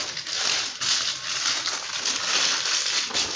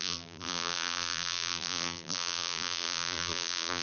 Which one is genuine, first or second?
first